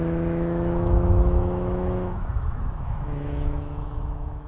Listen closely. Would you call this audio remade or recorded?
remade